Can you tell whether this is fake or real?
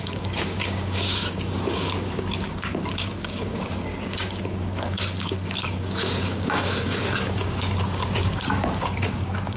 fake